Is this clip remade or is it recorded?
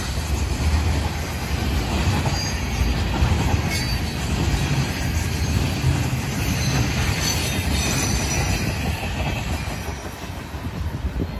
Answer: recorded